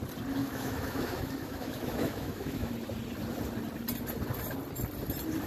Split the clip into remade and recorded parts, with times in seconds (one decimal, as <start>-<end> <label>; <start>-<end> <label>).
0.0-0.4 recorded; 0.4-2.7 remade; 2.7-5.5 recorded